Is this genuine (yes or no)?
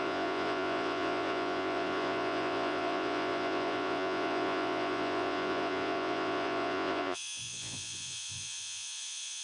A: no